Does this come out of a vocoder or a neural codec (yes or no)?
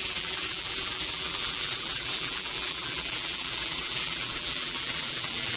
yes